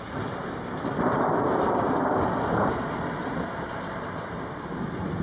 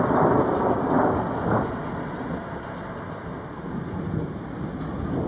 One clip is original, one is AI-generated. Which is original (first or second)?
second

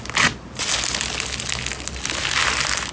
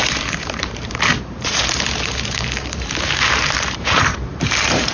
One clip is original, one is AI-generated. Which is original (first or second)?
first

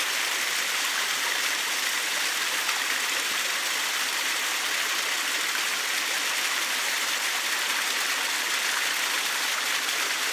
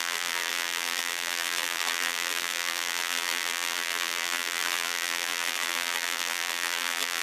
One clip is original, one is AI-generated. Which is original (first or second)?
first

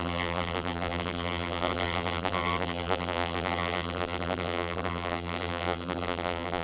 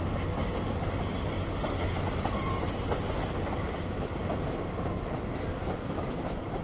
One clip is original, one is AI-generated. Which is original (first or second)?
second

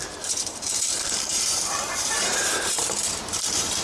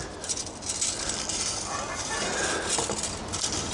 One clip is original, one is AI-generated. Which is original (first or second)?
second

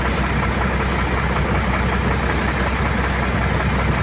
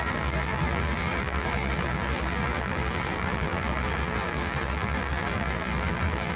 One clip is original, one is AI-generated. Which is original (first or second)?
first